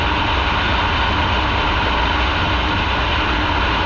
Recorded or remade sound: recorded